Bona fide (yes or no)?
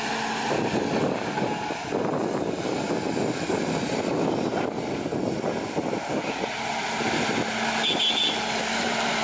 yes